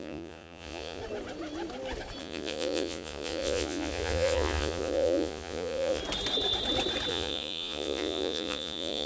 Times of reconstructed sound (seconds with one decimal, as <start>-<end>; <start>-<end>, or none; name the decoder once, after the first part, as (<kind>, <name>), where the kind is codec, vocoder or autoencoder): 0.0-1.0 (vocoder, Vocos); 2.2-6.0; 7.1-9.1